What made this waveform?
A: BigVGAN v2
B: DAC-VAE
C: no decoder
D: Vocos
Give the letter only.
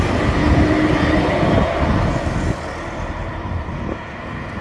C